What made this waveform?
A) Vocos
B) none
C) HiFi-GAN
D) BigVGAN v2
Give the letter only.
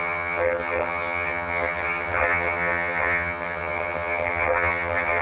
C